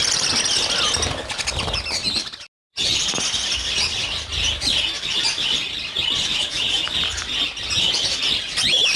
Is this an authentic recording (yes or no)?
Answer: yes